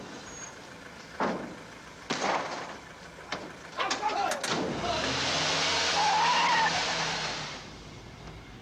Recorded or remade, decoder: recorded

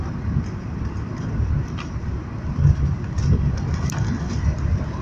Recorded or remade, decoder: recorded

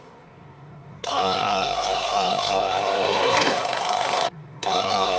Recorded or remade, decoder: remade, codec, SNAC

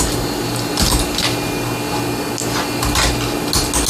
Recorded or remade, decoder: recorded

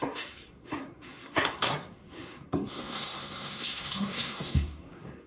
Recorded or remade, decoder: remade, codec, SNAC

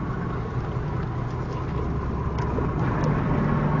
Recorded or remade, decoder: recorded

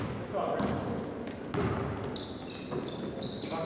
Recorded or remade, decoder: recorded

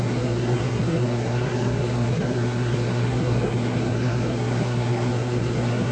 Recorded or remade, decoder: remade, codec, SNAC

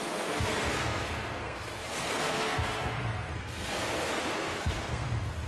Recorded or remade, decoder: remade, codec, SNAC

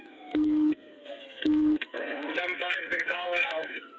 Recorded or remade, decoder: remade, codec, SNAC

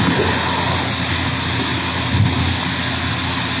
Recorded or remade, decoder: recorded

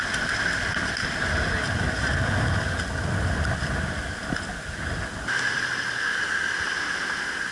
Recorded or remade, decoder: recorded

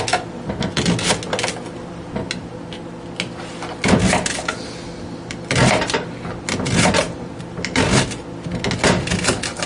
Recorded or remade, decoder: recorded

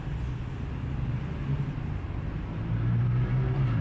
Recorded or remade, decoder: recorded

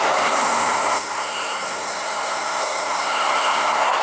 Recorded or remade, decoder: remade, codec, SNAC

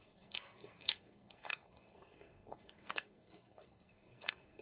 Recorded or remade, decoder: remade, codec, SNAC